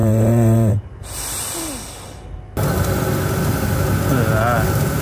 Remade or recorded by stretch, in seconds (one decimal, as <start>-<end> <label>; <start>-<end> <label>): 0.0-1.2 remade; 1.2-5.0 recorded

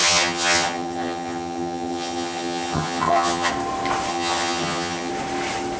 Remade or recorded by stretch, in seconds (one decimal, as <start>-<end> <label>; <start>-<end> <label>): 0.0-3.5 remade; 3.5-4.1 recorded; 4.1-5.1 remade; 5.1-5.8 recorded

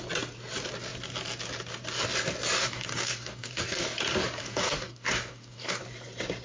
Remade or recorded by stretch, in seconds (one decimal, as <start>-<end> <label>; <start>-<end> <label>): 0.0-2.6 recorded; 2.6-3.8 remade; 3.8-4.4 recorded; 4.4-5.8 remade; 5.8-6.4 recorded

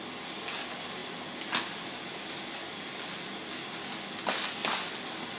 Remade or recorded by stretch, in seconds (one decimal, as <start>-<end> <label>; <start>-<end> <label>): 0.0-5.4 recorded

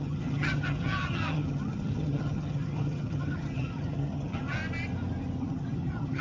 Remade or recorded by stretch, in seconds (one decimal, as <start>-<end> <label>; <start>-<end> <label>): 0.0-4.6 remade; 4.6-5.4 recorded; 5.4-6.2 remade

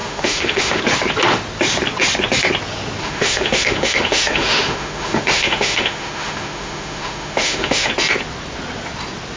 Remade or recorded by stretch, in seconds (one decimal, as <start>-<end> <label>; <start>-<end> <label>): 0.0-0.8 remade; 0.8-3.0 recorded; 3.0-7.9 remade; 7.9-9.4 recorded